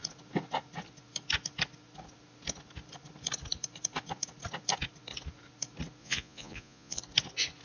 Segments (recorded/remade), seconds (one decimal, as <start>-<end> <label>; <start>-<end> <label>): 0.0-6.0 recorded; 6.0-7.0 remade; 7.0-7.6 recorded